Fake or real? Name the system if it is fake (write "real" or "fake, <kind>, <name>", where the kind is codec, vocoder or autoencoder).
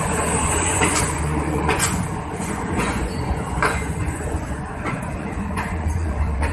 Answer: fake, vocoder, Vocos